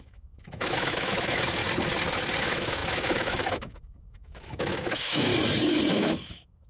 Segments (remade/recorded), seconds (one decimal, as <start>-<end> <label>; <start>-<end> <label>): 0.0-1.6 remade; 1.6-2.4 recorded; 2.4-5.3 remade; 5.3-5.9 recorded; 5.9-6.7 remade